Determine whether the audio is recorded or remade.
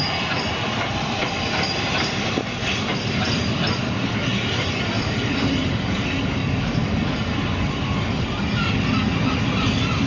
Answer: recorded